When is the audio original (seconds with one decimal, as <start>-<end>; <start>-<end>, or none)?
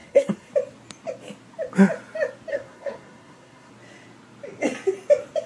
0.5-2.5; 3.7-5.5